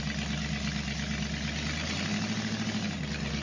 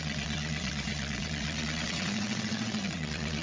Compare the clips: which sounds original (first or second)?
first